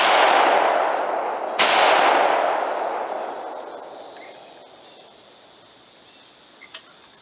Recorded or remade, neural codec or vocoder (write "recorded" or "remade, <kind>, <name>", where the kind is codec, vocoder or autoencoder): recorded